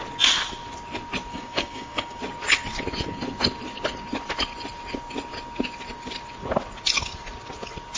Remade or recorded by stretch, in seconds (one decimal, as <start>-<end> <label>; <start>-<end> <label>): 0.0-1.3 recorded; 1.3-2.2 remade; 2.2-8.0 recorded